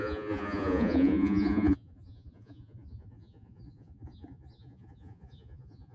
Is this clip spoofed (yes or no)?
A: yes